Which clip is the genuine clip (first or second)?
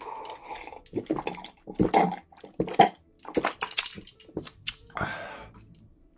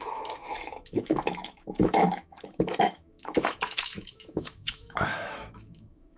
first